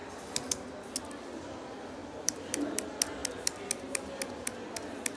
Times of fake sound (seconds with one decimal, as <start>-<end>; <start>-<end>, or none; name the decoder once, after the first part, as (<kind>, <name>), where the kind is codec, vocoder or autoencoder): 2.0-2.8 (vocoder, BigVGAN v2)